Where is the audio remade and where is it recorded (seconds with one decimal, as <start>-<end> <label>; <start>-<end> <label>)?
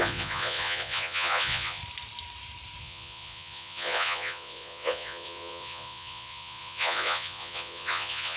0.0-1.8 remade; 1.8-2.8 recorded; 2.8-8.4 remade